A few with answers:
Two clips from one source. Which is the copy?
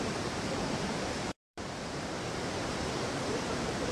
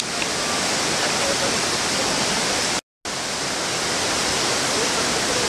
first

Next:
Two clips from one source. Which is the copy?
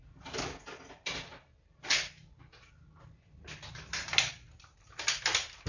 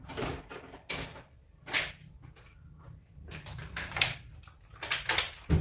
second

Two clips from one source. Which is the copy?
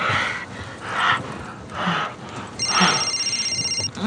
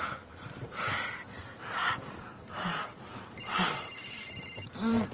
second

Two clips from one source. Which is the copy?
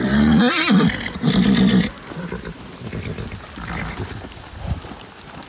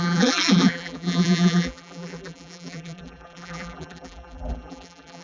second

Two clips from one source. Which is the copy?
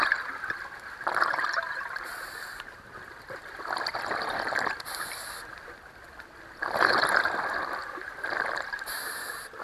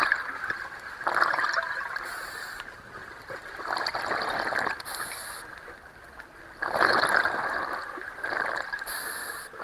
first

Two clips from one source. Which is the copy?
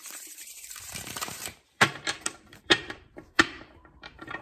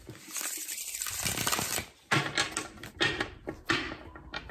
first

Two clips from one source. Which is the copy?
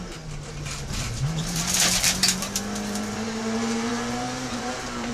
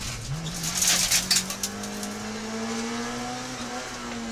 first